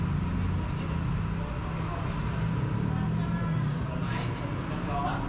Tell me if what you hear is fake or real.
real